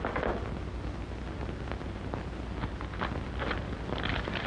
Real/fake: real